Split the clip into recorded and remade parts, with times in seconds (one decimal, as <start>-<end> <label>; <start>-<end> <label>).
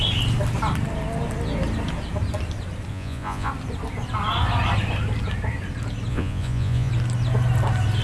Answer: 0.0-2.9 recorded; 2.9-3.5 remade; 3.5-6.1 recorded; 6.1-6.9 remade; 6.9-8.0 recorded